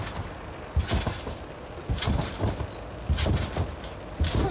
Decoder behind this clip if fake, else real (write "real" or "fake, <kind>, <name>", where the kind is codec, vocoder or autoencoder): real